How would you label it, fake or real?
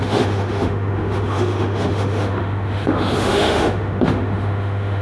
fake